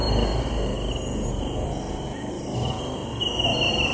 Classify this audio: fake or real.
real